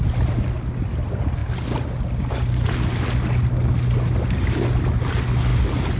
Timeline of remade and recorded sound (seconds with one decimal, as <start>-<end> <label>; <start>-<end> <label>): 0.0-6.0 recorded